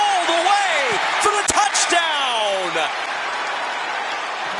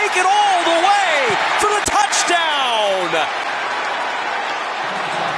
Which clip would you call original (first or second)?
second